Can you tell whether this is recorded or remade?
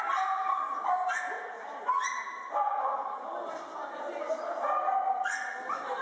recorded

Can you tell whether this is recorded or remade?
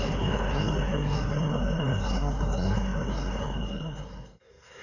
remade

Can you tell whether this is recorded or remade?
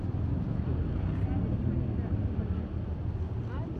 recorded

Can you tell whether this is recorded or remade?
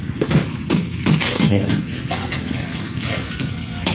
remade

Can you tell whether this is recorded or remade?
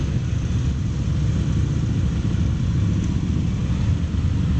recorded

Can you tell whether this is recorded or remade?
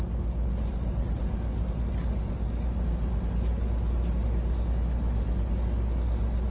recorded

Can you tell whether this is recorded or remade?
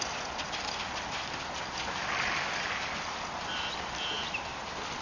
recorded